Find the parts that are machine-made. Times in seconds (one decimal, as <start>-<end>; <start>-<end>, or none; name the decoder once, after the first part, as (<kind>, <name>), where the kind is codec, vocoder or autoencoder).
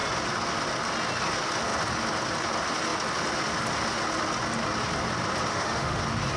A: 5.5-6.0 (autoencoder, DAC-VAE)